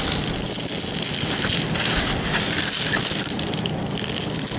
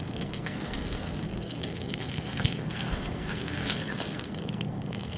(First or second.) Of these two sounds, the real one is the first